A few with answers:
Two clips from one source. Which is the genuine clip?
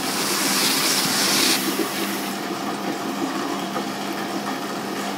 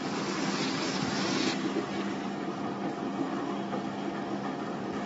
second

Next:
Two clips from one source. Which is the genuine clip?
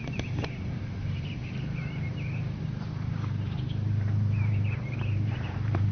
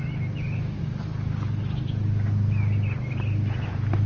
second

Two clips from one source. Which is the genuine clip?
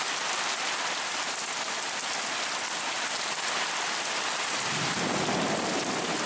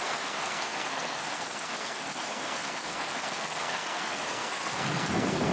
first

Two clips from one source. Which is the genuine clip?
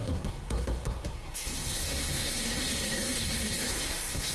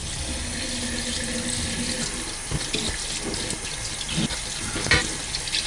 second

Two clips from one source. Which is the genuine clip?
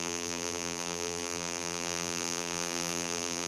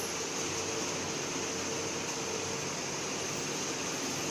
second